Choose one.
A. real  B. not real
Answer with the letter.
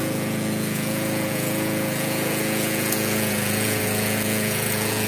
B